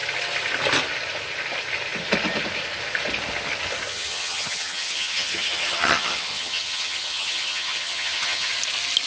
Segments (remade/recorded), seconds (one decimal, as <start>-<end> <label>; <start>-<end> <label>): 0.0-3.9 recorded; 3.9-8.5 remade; 8.5-9.1 recorded